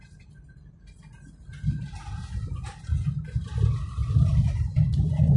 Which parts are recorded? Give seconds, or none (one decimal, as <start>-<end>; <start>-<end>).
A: 0.0-4.0